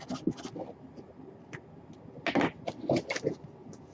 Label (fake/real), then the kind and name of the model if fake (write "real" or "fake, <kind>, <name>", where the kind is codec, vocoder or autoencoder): real